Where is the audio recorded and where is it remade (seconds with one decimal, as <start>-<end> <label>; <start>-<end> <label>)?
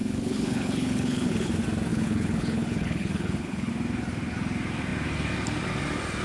0.0-1.5 remade; 1.5-1.9 recorded; 1.9-3.7 remade; 3.7-6.2 recorded